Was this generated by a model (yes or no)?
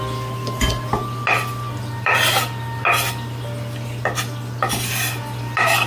no